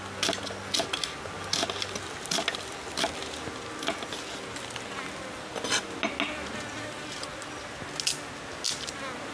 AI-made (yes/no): no